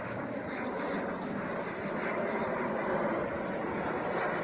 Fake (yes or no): no